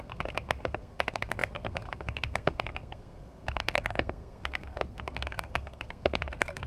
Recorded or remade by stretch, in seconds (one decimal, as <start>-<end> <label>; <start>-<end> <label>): 0.0-6.7 remade